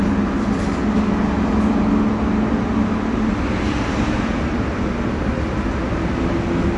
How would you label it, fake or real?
real